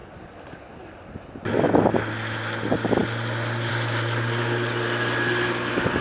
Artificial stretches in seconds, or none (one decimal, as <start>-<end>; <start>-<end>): 0.0-1.7